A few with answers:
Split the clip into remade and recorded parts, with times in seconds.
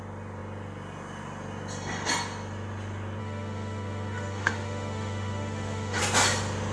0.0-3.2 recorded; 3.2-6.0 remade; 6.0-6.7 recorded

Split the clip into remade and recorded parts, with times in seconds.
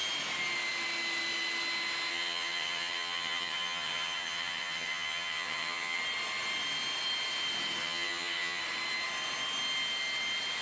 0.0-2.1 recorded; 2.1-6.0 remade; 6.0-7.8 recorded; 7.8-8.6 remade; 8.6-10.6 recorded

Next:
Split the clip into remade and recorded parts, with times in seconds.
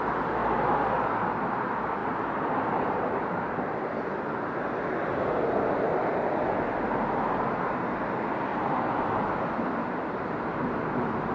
0.0-2.0 recorded; 2.0-4.1 remade; 4.1-8.5 recorded; 8.5-9.5 remade; 9.5-11.3 recorded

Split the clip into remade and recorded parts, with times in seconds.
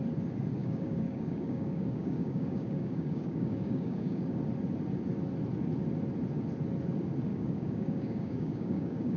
0.0-0.6 recorded; 0.6-4.4 remade; 4.4-7.3 recorded; 7.3-9.2 remade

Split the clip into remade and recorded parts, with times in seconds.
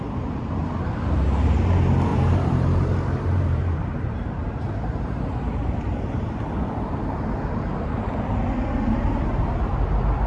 0.0-2.1 recorded; 2.1-6.3 remade; 6.3-10.3 recorded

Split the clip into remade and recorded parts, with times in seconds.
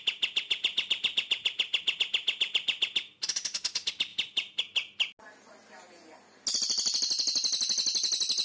0.0-4.1 recorded; 4.1-4.6 remade; 4.6-8.4 recorded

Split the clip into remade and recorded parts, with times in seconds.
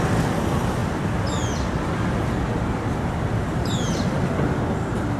0.0-5.2 recorded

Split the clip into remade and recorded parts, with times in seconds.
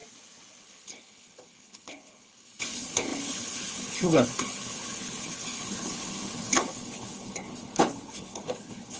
0.0-0.6 recorded; 0.6-9.0 remade